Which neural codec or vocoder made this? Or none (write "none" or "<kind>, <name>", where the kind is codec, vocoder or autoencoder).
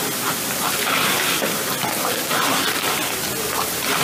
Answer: none